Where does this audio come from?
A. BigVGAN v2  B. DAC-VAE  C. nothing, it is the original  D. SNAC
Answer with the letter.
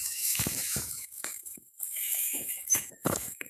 B